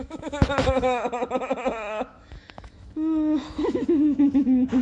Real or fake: fake